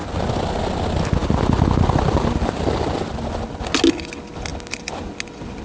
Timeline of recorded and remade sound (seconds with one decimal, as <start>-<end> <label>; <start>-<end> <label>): 0.0-1.2 recorded; 1.2-3.6 remade; 3.6-5.6 recorded